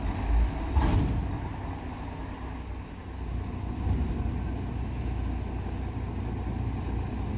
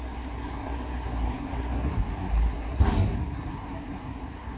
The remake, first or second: second